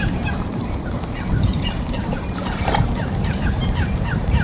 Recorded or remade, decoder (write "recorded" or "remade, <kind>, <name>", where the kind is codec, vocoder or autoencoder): remade, vocoder, BigVGAN v2